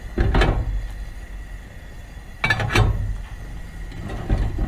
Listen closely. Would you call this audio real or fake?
real